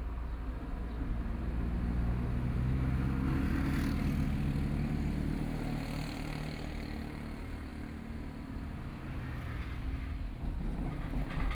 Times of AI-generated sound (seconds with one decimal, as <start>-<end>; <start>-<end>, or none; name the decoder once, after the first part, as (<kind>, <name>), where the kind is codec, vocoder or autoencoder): none